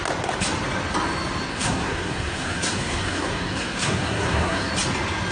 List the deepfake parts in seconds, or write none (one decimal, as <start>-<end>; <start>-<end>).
1.5-4.7